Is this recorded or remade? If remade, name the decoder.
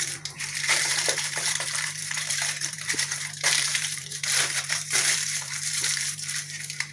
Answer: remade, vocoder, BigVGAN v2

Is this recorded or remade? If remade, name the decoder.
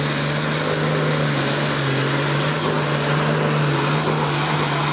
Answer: recorded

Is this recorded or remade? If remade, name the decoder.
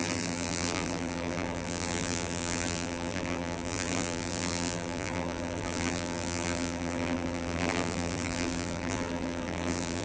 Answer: remade, vocoder, BigVGAN v2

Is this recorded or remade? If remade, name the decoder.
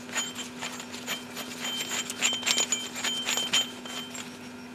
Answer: recorded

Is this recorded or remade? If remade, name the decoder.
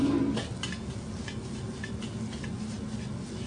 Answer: recorded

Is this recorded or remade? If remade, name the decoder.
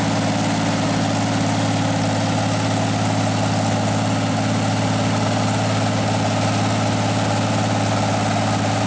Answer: recorded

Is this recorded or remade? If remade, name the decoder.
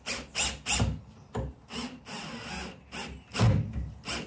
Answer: recorded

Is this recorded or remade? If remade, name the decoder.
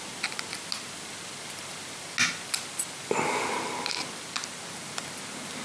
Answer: recorded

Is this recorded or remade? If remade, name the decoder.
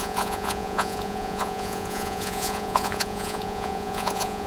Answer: remade, vocoder, Vocos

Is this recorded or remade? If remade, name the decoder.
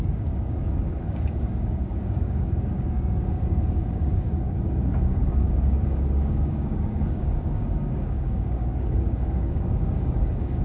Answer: remade, codec, DAC